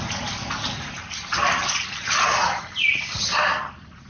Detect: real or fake real